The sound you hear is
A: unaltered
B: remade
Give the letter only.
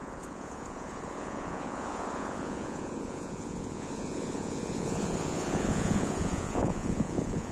B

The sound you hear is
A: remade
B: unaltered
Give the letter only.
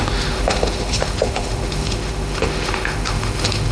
A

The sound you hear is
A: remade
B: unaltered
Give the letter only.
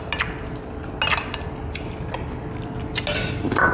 B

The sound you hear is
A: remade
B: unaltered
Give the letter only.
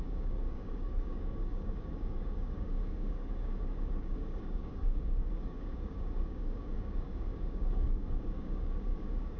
A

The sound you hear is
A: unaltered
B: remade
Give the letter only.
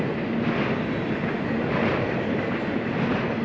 A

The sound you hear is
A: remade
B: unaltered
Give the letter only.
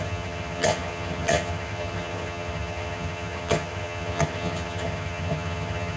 A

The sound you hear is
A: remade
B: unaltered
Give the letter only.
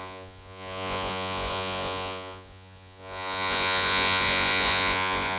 A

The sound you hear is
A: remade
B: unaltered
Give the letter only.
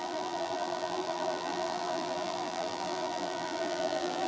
A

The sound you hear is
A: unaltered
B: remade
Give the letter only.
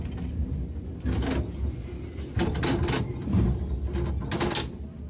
A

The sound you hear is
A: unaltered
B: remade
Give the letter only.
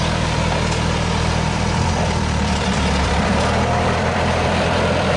B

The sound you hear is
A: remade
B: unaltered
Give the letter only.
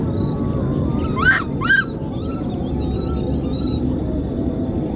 B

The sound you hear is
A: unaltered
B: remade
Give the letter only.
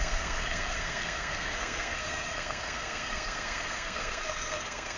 B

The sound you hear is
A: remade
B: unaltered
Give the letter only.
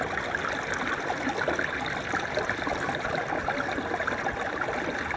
B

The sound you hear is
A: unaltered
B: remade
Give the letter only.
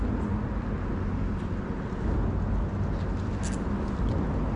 A